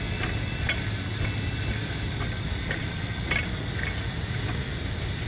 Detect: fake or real real